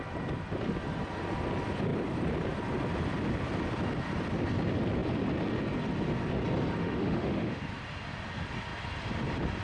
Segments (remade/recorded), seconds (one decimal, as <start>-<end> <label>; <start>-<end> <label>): 0.0-6.8 recorded; 6.8-7.6 remade; 7.6-9.6 recorded